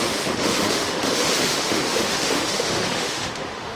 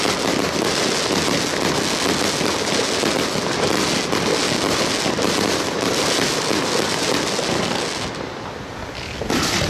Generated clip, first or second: first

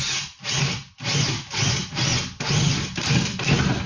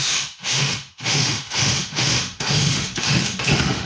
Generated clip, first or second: second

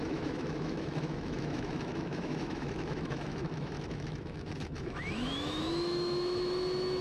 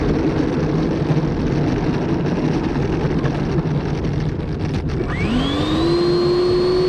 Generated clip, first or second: first